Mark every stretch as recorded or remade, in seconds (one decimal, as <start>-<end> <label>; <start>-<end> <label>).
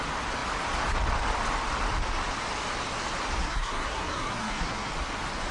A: 0.0-3.4 recorded; 3.4-4.9 remade; 4.9-5.5 recorded